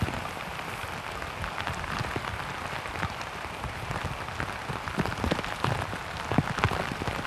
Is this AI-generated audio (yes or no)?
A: no